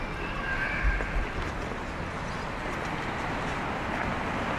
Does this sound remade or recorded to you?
recorded